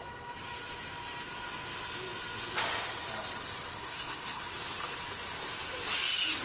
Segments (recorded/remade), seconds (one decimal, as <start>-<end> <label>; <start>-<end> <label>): 0.0-3.8 recorded; 3.8-4.4 remade; 4.4-6.4 recorded